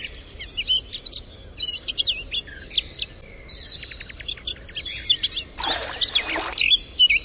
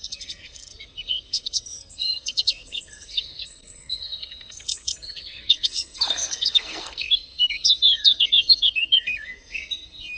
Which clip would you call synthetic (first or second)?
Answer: second